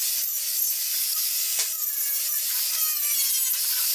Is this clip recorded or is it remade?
recorded